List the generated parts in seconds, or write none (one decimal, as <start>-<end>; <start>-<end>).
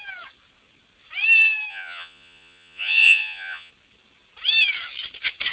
1.7-3.7